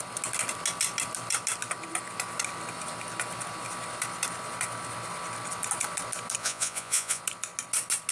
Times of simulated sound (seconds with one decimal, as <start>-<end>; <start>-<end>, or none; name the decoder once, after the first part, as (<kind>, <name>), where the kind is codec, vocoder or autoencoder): 6.4-7.2 (vocoder, Vocos)